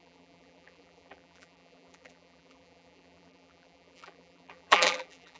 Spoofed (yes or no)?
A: yes